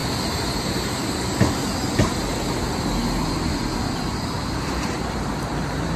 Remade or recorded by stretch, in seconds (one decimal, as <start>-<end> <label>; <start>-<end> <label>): 0.0-0.5 recorded; 0.5-1.0 remade; 1.0-4.6 recorded; 4.6-6.0 remade

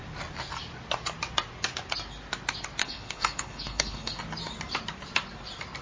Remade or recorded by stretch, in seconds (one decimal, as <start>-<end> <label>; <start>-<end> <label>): 0.0-2.8 recorded; 2.8-4.2 remade; 4.2-5.8 recorded